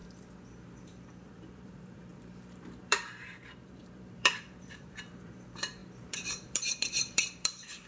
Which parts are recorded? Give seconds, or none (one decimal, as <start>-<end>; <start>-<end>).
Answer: 0.0-0.8